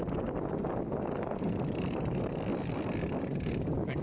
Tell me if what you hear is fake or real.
real